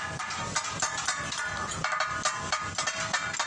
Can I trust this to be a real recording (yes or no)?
yes